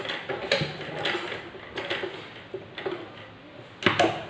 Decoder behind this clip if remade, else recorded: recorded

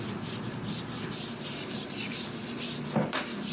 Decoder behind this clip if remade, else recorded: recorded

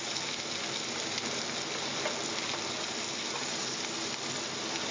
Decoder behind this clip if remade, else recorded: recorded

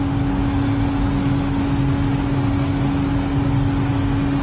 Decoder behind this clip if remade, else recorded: recorded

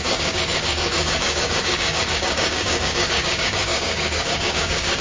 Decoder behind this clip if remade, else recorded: remade, codec, DAC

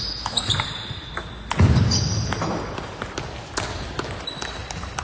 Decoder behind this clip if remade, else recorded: recorded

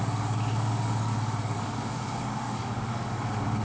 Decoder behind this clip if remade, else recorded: remade, codec, DAC